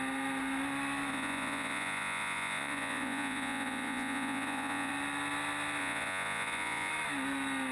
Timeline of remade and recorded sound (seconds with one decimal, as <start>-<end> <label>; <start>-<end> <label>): 0.0-1.1 recorded; 1.1-4.9 remade; 4.9-5.8 recorded; 5.8-6.9 remade; 6.9-7.7 recorded